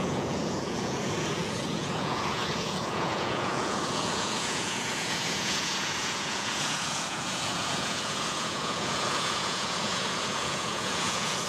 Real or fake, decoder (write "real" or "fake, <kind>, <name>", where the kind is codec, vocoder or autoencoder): fake, vocoder, Vocos